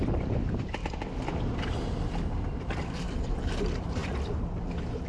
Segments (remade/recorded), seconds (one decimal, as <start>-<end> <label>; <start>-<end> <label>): 0.0-4.0 remade; 4.0-5.1 recorded